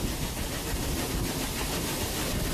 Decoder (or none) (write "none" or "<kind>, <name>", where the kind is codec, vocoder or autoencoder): none